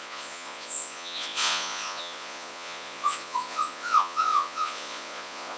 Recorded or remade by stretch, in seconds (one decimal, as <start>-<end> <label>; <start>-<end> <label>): 0.0-5.6 remade